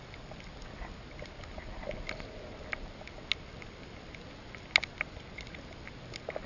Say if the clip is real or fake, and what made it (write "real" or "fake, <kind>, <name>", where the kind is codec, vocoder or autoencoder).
real